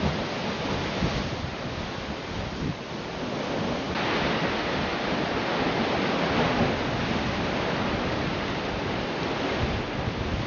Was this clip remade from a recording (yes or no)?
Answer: no